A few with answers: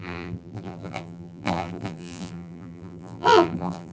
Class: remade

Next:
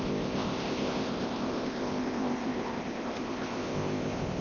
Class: remade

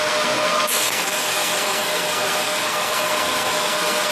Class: remade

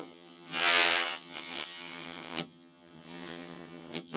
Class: remade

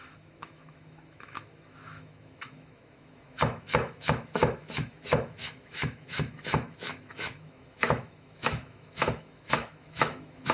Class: remade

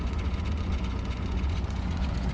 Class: remade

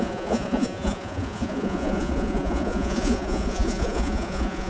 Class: remade